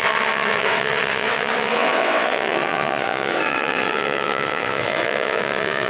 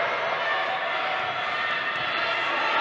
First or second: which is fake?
first